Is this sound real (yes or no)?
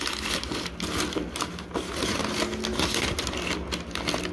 yes